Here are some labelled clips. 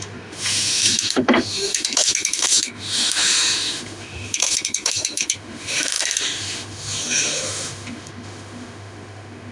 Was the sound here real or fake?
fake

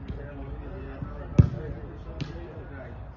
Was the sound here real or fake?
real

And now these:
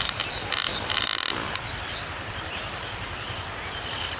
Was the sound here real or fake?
real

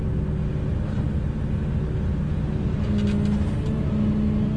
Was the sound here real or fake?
real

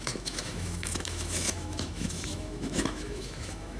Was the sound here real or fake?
fake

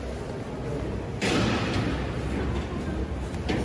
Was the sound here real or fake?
real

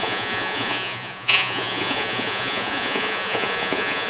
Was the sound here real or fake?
fake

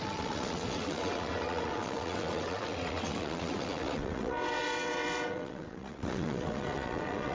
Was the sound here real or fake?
fake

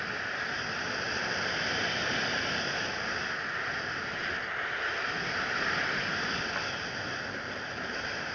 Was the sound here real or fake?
real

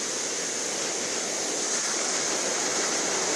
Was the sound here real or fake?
real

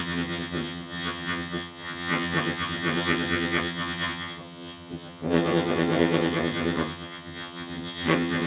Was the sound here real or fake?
fake